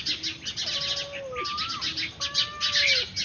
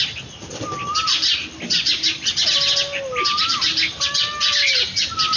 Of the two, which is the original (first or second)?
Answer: first